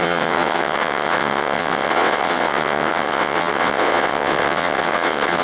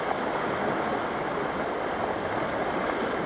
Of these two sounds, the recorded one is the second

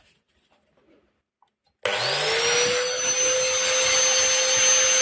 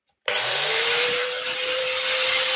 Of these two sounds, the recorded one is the first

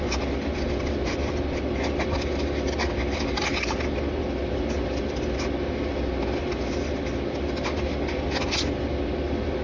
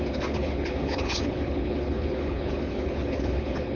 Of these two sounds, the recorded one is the first